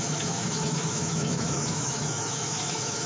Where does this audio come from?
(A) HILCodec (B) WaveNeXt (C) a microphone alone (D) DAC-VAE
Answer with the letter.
D